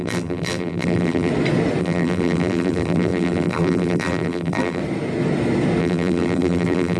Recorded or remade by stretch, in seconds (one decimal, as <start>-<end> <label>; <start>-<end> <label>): 0.0-1.3 remade; 1.3-1.8 recorded; 1.8-4.8 remade; 4.8-5.8 recorded; 5.8-7.0 remade